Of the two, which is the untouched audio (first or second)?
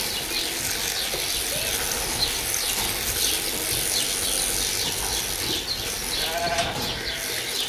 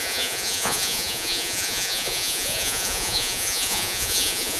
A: first